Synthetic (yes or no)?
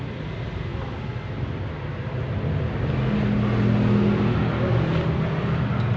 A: no